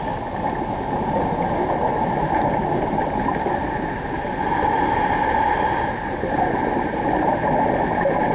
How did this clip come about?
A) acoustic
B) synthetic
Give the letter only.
A